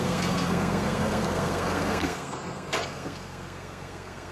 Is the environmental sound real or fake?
fake